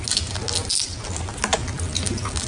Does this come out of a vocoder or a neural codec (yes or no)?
no